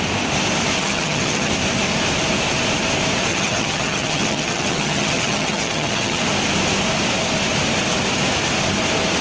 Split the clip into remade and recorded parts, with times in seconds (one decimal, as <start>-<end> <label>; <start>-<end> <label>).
0.0-0.8 recorded; 0.8-1.5 remade; 1.5-3.3 recorded; 3.3-6.2 remade; 6.2-9.2 recorded

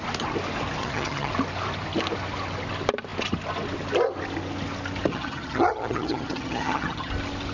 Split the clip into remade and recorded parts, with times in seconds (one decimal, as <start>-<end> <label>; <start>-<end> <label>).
0.0-0.8 recorded; 0.8-1.3 remade; 1.3-5.1 recorded; 5.1-7.1 remade; 7.1-7.5 recorded

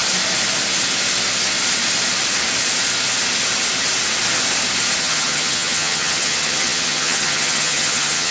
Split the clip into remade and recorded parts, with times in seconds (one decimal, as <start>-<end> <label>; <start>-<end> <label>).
0.0-5.0 recorded; 5.0-8.3 remade

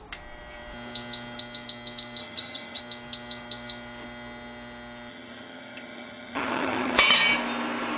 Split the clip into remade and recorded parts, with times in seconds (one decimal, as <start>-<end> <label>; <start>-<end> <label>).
0.0-2.2 recorded; 2.2-2.8 remade; 2.8-5.1 recorded; 5.1-7.0 remade; 7.0-8.0 recorded

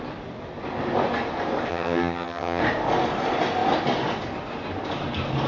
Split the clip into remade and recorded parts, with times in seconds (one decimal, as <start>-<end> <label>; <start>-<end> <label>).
0.0-1.7 recorded; 1.7-2.6 remade; 2.6-5.5 recorded

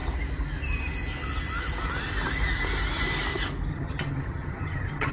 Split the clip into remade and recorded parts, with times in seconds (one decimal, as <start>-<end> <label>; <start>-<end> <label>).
0.0-3.7 recorded; 3.7-5.1 remade

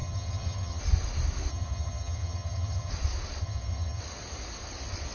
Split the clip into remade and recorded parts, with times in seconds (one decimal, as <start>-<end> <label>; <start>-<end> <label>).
0.0-0.8 remade; 0.8-1.5 recorded; 1.5-2.9 remade; 2.9-3.4 recorded; 3.4-4.0 remade; 4.0-5.1 recorded